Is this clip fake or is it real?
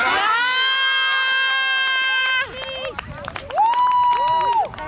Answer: real